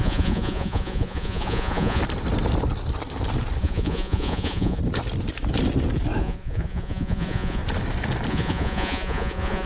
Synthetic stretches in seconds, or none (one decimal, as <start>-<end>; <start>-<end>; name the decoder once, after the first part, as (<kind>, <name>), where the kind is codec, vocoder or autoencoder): 0.0-2.0 (vocoder, Vocos); 3.6-4.8; 6.2-7.6; 8.3-9.7

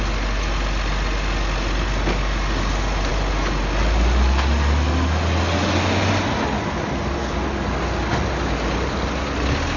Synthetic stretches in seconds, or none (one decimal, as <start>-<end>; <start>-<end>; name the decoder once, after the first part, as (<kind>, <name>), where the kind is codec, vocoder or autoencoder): none

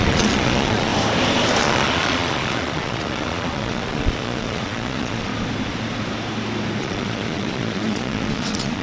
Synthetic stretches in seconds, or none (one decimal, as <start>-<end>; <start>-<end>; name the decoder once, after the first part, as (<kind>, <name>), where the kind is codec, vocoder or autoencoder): 0.0-0.9 (vocoder, Vocos); 1.6-5.3; 6.8-8.8

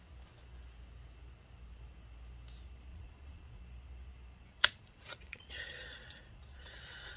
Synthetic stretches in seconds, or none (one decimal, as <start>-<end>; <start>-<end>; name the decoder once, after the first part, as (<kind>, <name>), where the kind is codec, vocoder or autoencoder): 2.9-3.6 (vocoder, Vocos); 4.5-7.2

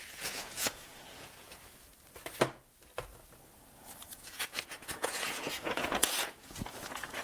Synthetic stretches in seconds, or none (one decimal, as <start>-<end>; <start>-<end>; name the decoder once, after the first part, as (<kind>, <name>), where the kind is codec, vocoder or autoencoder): 0.0-1.9 (vocoder, Vocos); 4.0-7.2

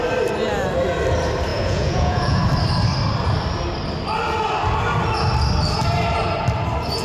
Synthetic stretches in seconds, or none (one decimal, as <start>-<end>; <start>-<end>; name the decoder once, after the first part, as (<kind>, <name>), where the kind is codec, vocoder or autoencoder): 1.5-2.4 (vocoder, Vocos)

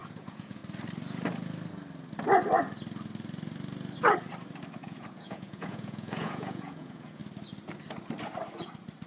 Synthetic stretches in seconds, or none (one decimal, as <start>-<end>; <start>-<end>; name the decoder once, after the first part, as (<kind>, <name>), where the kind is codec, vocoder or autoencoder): 0.0-0.6 (vocoder, Vocos); 4.8-7.2

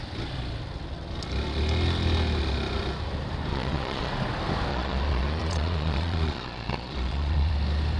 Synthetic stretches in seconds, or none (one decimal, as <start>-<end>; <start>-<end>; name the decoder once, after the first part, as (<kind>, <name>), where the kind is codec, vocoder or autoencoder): 3.5-4.1 (vocoder, Vocos); 4.7-7.5